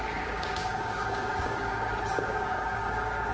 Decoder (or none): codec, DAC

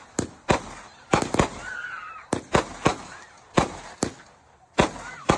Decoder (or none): none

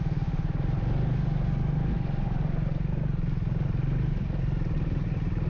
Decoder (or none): none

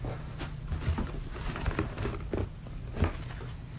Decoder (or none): none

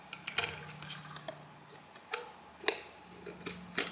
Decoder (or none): none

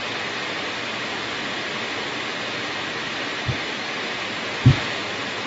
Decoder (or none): none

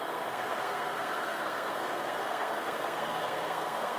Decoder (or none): codec, SNAC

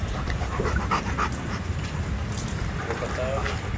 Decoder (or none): none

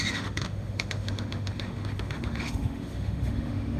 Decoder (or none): autoencoder, DAC-VAE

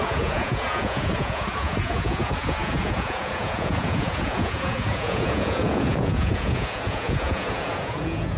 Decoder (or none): vocoder, Vocos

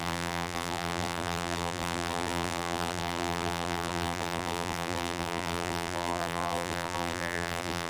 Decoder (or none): vocoder, BigVGAN v2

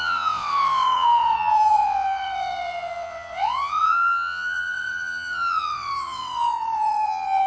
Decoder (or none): vocoder, WaveNeXt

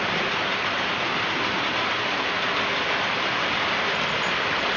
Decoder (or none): none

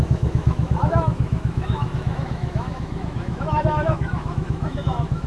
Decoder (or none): autoencoder, DAC-VAE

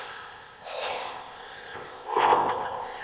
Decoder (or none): codec, ZipCodec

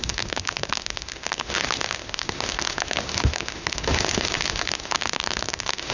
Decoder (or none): autoencoder, DAC-VAE